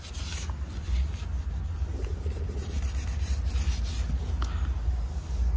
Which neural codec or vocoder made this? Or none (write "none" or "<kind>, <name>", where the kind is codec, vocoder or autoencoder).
none